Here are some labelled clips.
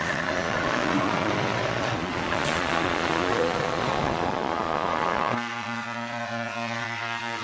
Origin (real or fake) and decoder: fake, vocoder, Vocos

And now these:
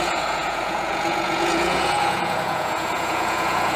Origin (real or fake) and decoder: fake, vocoder, Vocos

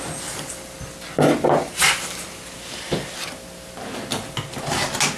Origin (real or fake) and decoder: real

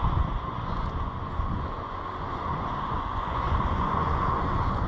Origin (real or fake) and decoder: fake, vocoder, Vocos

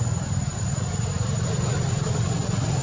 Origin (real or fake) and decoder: real